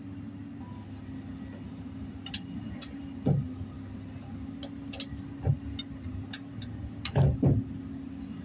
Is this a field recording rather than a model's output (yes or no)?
yes